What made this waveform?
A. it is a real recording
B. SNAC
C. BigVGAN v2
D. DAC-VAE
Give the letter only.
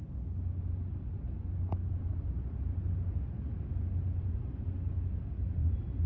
A